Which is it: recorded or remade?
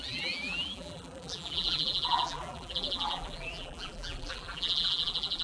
remade